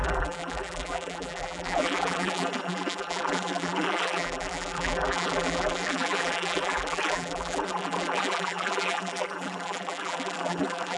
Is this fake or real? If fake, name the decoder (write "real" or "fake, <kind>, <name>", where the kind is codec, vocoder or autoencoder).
fake, vocoder, BigVGAN v2